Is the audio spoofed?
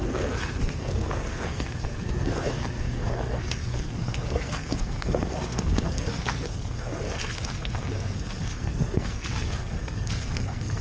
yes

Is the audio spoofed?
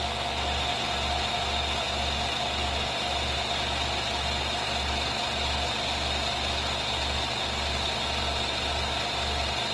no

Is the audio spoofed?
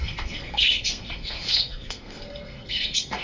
yes